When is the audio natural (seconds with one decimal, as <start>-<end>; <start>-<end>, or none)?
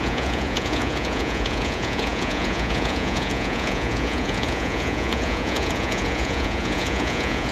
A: none